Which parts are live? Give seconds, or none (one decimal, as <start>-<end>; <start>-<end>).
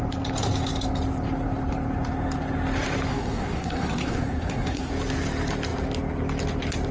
0.0-3.1; 4.9-6.9